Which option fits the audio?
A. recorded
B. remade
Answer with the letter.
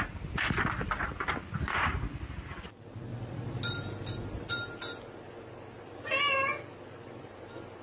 A